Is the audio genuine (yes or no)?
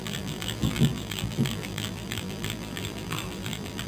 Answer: no